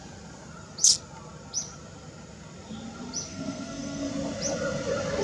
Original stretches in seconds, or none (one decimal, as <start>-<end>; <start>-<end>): 0.0-3.3; 4.1-5.2